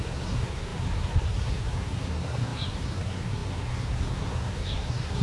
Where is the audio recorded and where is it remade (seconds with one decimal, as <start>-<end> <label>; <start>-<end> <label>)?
0.0-5.2 remade